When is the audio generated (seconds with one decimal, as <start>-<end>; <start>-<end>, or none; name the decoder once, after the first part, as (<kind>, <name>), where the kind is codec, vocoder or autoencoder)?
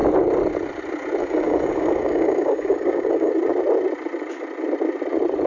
1.2-3.3 (codec, DAC)